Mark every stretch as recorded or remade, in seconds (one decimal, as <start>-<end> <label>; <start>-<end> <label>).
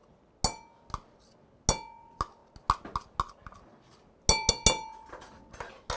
0.0-6.0 recorded